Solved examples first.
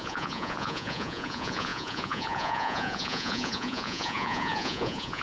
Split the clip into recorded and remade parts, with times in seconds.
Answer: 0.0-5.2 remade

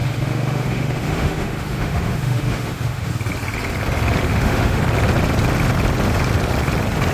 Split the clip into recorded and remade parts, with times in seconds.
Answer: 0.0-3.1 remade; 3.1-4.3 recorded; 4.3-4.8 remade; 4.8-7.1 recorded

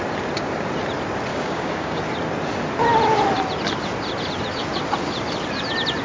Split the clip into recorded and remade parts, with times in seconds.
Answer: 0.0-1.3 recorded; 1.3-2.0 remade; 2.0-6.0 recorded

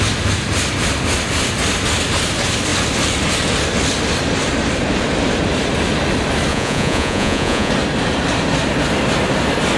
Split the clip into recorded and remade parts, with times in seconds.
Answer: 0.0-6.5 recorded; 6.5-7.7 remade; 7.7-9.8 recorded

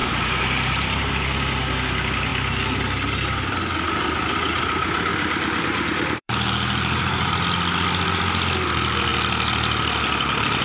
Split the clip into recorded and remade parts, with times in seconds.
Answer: 0.0-1.1 remade; 1.1-5.1 recorded; 5.1-7.3 remade; 7.3-10.6 recorded

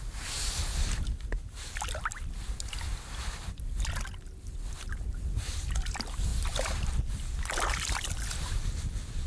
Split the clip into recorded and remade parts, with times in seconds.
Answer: 0.0-6.3 recorded; 6.3-7.1 remade; 7.1-9.3 recorded